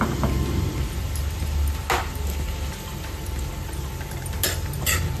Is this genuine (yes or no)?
yes